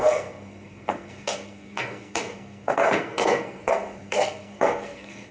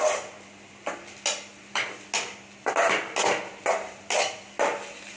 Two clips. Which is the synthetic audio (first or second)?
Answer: first